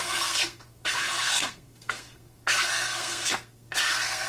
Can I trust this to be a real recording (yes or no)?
no